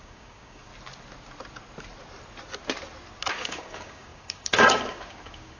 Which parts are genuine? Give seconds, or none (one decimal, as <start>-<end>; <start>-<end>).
0.7-3.3